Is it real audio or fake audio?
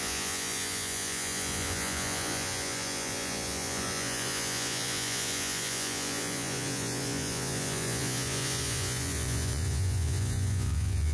fake